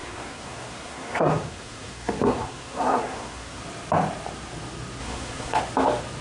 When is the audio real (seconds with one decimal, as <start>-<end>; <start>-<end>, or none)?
3.6-5.0; 5.6-6.2